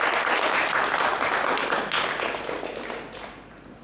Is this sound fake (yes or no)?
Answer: no